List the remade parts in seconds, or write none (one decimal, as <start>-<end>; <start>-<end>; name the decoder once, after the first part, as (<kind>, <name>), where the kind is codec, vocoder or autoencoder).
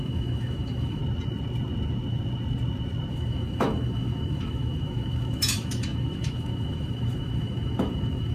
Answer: 0.0-1.0 (autoencoder, DAC-VAE); 3.1-8.3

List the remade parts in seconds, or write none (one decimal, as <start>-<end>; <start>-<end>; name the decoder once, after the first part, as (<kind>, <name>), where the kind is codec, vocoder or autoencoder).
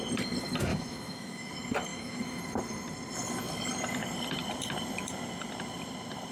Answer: 0.7-1.5 (autoencoder, DAC-VAE); 1.9-2.4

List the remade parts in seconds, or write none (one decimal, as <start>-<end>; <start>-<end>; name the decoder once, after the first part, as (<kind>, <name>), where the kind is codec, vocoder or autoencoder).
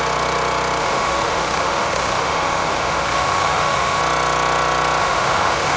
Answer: 0.8-4.0 (autoencoder, DAC-VAE); 5.0-5.8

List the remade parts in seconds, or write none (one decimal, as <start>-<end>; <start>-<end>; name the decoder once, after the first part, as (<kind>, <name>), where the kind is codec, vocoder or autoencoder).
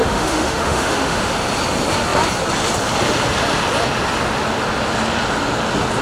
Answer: 0.0-1.3 (autoencoder, DAC-VAE)